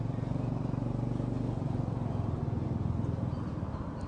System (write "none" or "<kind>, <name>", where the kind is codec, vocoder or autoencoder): none